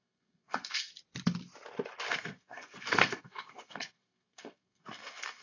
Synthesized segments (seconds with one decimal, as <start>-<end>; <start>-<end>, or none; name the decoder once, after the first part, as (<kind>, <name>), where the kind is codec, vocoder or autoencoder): 0.0-0.9 (codec, SNAC); 2.1-5.4